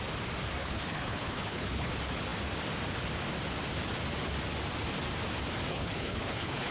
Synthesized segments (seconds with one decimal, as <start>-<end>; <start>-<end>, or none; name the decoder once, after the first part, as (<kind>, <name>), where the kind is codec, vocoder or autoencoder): 0.6-1.9 (codec, HILCodec); 5.7-6.7